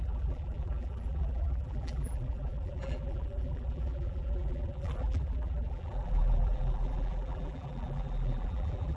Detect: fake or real fake